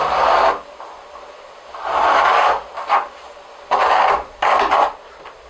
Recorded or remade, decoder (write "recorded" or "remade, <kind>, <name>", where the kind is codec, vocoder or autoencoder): recorded